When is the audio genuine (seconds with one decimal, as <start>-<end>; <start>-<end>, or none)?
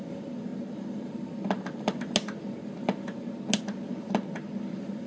0.0-5.1